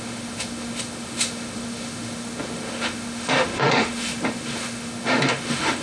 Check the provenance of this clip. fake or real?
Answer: fake